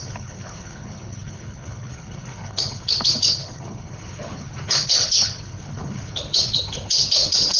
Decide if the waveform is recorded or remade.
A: remade